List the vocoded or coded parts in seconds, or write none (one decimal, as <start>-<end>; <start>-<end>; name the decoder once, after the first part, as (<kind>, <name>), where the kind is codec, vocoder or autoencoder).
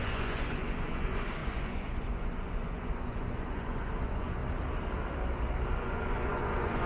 0.0-4.4 (vocoder, Vocos); 5.7-6.9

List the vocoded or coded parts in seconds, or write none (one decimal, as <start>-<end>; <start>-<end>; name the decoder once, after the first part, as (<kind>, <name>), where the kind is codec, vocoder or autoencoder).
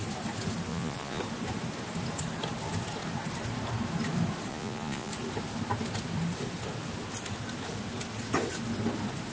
0.7-1.2 (vocoder, Vocos); 4.5-5.1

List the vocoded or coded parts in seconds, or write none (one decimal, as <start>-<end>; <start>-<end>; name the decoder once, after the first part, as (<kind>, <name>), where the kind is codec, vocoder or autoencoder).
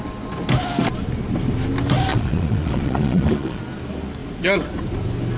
2.1-3.6 (vocoder, Vocos)